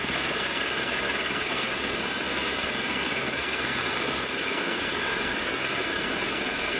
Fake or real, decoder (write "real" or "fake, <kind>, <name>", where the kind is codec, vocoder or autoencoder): fake, codec, SNAC